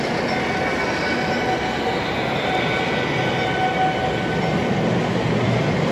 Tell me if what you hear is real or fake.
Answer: real